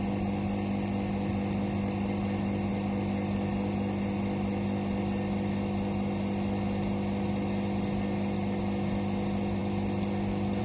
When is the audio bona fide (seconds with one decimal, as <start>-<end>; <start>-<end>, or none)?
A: 0.0-10.6